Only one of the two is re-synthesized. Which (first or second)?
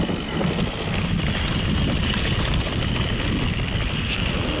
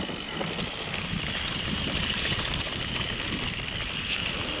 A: second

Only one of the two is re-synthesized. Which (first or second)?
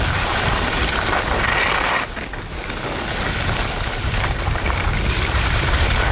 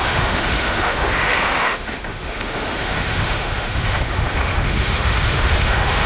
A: second